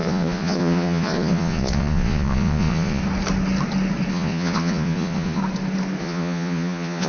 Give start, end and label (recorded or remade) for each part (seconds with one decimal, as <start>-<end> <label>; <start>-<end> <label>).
0.0-3.0 remade; 3.0-4.1 recorded; 4.1-5.4 remade; 5.4-6.0 recorded; 6.0-7.1 remade